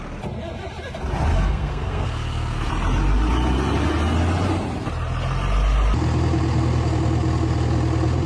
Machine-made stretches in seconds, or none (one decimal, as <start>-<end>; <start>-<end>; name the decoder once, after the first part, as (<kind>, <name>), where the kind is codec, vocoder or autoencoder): 1.3-2.7 (codec, SNAC)